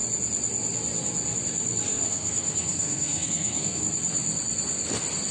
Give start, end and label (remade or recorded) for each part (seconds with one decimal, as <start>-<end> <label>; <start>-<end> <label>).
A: 0.0-1.9 recorded; 1.9-3.8 remade; 3.8-5.3 recorded